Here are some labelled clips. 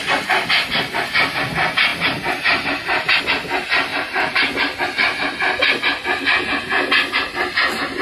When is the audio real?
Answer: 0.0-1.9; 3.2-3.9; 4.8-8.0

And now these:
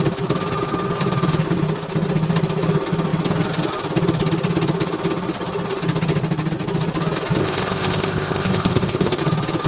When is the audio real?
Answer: 0.0-7.4; 9.2-9.7

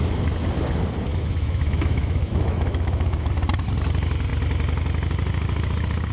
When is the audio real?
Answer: 0.0-1.1; 3.3-6.1

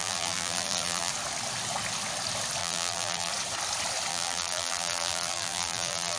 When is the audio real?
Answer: 1.1-2.6; 3.3-4.1

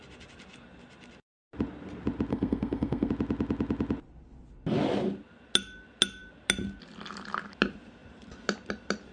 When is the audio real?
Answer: 0.0-2.3; 3.1-9.1

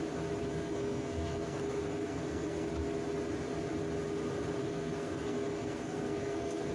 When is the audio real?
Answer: 0.0-0.4; 2.7-4.6

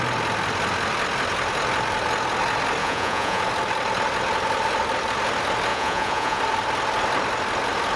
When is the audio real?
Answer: 0.0-2.8; 3.4-5.7; 6.4-8.0